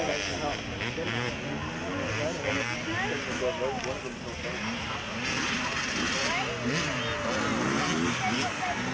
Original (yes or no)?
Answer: yes